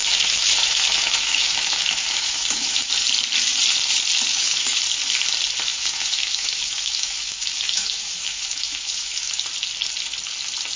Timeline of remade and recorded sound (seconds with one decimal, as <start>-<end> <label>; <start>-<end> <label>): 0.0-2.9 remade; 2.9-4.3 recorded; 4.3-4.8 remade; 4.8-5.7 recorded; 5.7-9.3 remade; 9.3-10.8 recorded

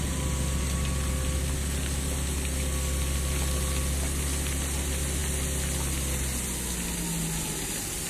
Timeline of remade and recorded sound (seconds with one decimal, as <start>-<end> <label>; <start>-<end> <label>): 0.0-8.1 recorded

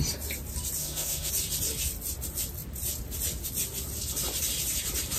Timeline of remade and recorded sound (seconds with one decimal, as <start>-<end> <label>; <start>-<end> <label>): 0.0-0.8 recorded; 0.8-1.3 remade; 1.3-5.2 recorded

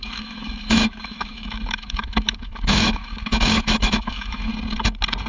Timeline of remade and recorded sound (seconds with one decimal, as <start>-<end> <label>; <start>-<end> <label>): 0.0-4.5 remade; 4.5-5.3 recorded

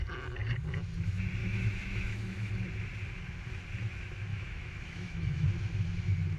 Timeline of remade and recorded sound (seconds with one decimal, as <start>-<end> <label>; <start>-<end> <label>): 0.0-1.4 recorded; 1.4-2.5 remade; 2.5-4.3 recorded; 4.3-5.5 remade; 5.5-6.4 recorded